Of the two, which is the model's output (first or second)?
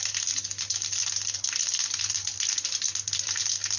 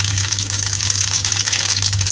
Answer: second